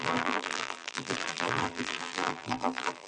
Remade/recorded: remade